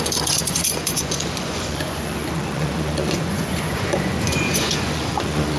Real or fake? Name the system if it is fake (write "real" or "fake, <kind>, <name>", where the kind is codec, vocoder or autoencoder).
fake, vocoder, Vocos